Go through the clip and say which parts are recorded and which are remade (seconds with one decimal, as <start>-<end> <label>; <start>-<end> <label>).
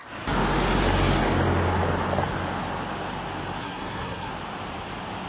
0.0-3.6 recorded; 3.6-4.3 remade; 4.3-5.3 recorded